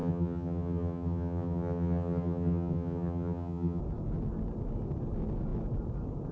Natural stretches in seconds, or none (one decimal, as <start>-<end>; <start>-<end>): 3.8-6.3

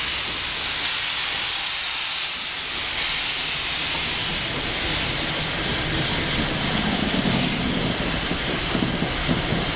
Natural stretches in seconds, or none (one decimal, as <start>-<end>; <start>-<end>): 0.0-9.8

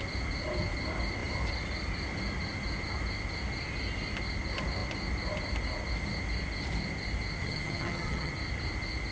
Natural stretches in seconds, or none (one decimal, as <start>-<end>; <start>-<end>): 0.0-7.4; 8.3-9.1